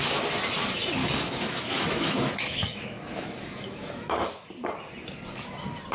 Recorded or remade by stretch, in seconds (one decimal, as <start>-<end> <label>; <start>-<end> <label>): 0.0-1.0 recorded; 1.0-4.5 remade; 4.5-5.9 recorded